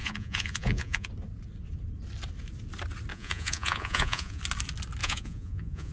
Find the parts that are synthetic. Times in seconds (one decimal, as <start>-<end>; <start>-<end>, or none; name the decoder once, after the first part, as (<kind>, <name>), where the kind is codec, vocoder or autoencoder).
0.0-1.1 (vocoder, Vocos); 3.1-4.4; 5.0-5.9